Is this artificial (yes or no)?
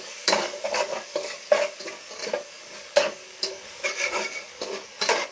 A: yes